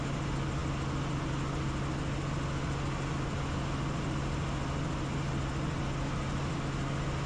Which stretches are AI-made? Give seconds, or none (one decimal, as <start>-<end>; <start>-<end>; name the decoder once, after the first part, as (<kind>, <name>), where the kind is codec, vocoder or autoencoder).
none